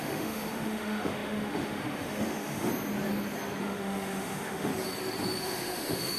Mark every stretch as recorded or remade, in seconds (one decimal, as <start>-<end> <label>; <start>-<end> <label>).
0.0-2.7 remade; 2.7-3.6 recorded; 3.6-4.7 remade; 4.7-5.4 recorded; 5.4-6.2 remade